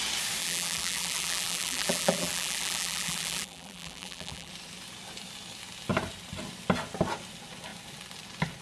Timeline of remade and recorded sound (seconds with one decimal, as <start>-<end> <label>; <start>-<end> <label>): 0.0-0.4 recorded; 0.4-4.5 remade; 4.5-8.6 recorded